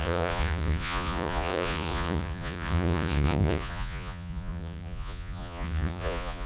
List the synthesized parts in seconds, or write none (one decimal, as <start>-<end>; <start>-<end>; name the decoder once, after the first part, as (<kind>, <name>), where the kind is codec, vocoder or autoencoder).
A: 0.0-6.5 (vocoder, Vocos)